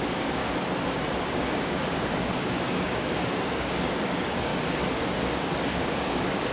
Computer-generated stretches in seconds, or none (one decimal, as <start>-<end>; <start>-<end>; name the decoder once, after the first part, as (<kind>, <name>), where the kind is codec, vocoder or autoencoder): 0.0-0.4 (codec, DAC); 1.2-4.5; 5.2-6.5